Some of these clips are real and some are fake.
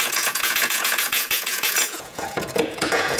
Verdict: fake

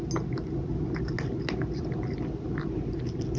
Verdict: real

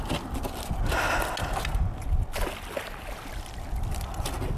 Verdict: real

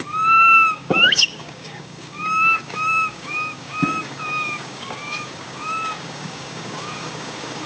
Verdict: fake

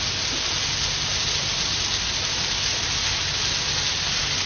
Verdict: real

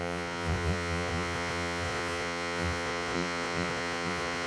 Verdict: fake